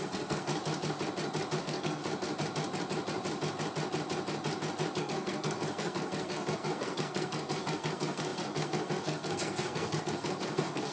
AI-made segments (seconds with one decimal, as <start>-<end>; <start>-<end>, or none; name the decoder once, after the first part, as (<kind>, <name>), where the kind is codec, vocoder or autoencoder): 0.0-0.5 (codec, SNAC); 1.6-2.0; 5.0-10.9